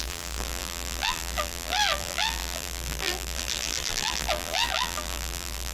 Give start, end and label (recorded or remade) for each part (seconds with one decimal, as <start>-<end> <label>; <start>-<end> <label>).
0.0-5.7 remade

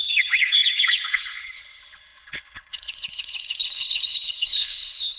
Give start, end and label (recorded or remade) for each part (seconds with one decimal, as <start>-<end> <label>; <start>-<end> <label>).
0.0-5.2 remade

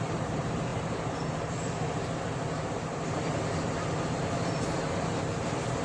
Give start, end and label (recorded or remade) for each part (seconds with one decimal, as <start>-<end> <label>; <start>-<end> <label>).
0.0-5.8 remade

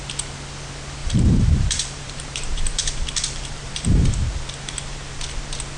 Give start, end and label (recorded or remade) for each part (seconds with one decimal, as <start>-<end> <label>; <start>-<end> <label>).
0.0-1.0 recorded; 1.0-4.5 remade; 4.5-5.8 recorded

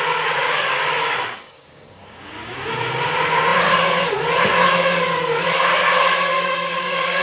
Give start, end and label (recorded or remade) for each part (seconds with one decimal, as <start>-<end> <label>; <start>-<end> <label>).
0.0-0.4 recorded; 0.4-2.5 remade; 2.5-6.3 recorded; 6.3-7.2 remade

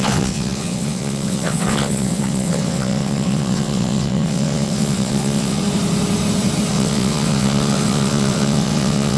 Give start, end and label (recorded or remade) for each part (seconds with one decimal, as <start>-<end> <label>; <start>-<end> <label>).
0.0-5.6 remade; 5.6-6.7 recorded; 6.7-9.2 remade